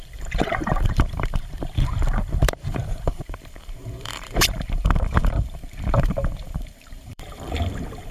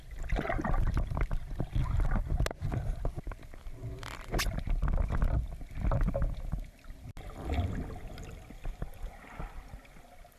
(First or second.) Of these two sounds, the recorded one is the second